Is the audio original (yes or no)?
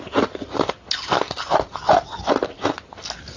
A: yes